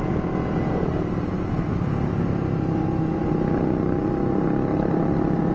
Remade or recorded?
recorded